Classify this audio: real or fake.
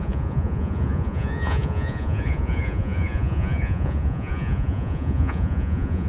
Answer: fake